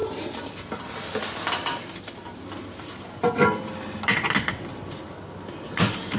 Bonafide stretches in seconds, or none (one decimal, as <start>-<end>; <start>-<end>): 0.0-6.2